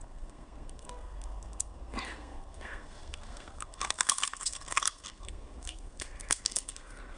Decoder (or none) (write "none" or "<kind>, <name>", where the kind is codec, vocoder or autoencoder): codec, SNAC